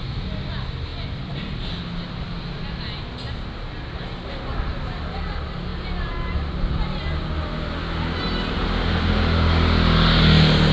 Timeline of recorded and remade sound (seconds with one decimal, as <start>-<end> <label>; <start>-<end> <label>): 0.0-10.7 recorded